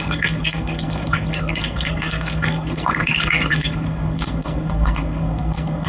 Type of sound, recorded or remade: remade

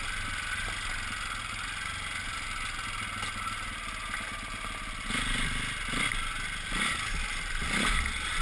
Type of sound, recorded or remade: recorded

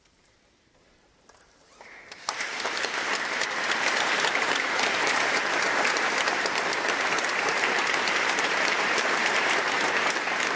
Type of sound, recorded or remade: remade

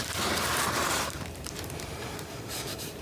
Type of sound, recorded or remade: remade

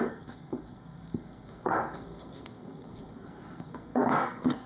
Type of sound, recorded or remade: remade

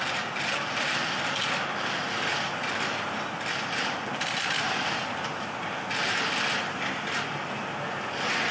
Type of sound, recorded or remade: recorded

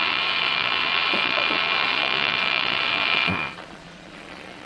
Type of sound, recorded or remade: remade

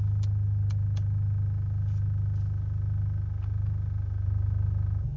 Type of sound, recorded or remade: recorded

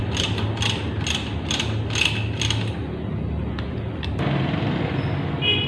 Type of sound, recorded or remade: recorded